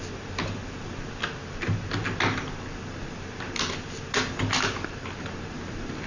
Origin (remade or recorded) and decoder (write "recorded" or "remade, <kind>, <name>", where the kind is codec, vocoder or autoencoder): recorded